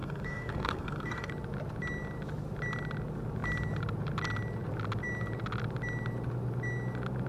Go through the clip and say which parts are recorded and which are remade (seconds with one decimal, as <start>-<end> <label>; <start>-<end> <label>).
0.0-1.3 remade; 1.3-7.3 recorded